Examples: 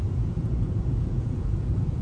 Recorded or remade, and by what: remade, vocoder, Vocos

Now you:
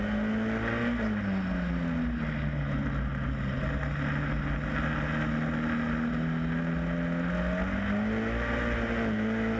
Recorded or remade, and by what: recorded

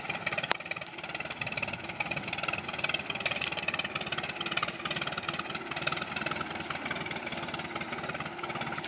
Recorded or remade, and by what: recorded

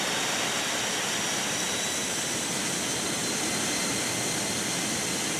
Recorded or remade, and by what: recorded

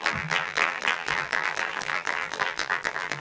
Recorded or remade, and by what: remade, vocoder, BigVGAN v2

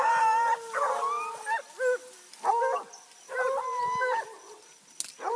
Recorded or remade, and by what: recorded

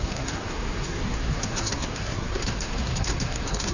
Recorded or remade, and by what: remade, codec, SNAC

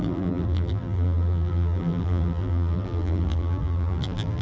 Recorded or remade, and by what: remade, vocoder, BigVGAN v2